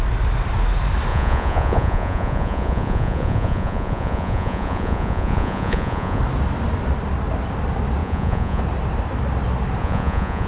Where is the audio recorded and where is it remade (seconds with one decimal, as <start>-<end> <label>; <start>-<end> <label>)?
0.0-1.1 recorded; 1.1-6.2 remade; 6.2-8.0 recorded; 8.0-8.6 remade; 8.6-9.8 recorded; 9.8-10.5 remade